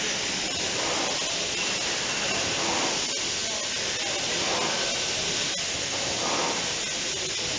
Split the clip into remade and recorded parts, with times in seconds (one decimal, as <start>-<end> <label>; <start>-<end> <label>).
0.0-7.6 recorded